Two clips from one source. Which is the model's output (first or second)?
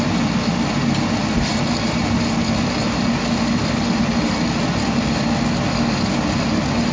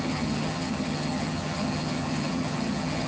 second